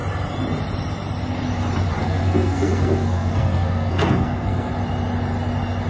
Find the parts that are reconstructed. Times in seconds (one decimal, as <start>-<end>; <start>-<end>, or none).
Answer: 2.0-4.7